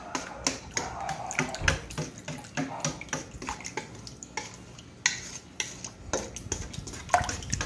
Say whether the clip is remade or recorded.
recorded